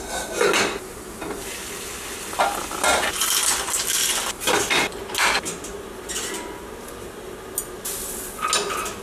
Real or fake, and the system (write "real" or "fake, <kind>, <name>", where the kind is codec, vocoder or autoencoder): real